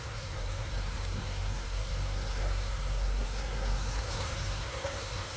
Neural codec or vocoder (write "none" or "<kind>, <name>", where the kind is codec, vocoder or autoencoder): codec, SNAC